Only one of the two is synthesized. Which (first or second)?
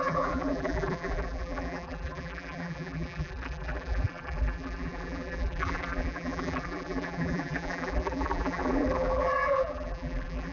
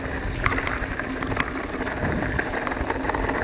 first